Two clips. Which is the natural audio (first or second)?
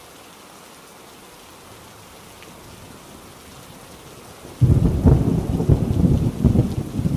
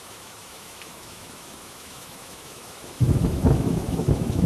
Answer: first